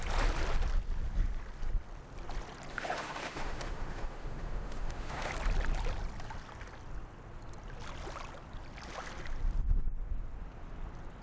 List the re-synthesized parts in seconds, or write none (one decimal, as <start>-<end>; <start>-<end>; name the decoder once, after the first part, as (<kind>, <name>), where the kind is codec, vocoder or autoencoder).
2.7-5.3 (autoencoder, DAC-VAE)